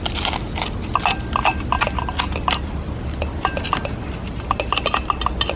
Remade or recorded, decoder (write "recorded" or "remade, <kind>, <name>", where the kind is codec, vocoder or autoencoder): recorded